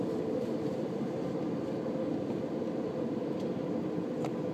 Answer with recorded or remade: remade